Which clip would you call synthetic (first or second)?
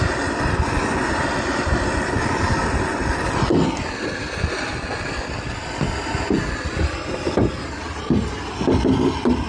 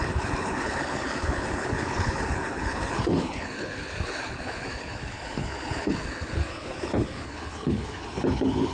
second